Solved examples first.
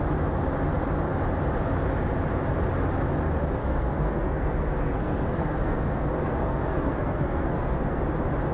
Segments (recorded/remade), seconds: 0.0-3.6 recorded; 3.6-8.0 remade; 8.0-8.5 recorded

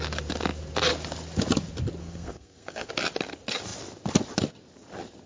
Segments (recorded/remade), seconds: 0.0-2.0 recorded; 2.0-2.9 remade; 2.9-5.3 recorded